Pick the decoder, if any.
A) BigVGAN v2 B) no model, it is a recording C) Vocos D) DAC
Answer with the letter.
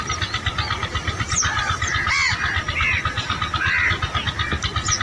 B